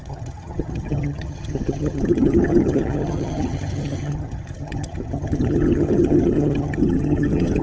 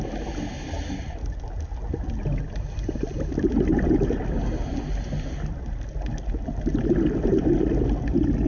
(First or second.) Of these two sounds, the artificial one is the first